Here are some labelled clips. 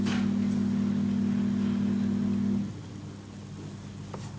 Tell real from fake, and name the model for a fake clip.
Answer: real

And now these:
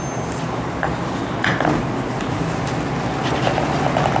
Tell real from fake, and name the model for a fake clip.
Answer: real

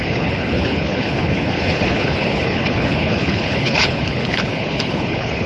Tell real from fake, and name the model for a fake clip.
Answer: fake, codec, HILCodec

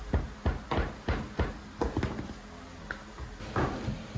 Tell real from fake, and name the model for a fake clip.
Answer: real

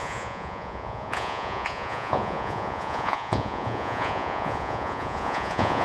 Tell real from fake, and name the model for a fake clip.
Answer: fake, vocoder, Vocos